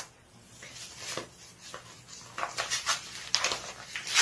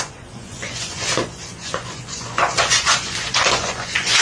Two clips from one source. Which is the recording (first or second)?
first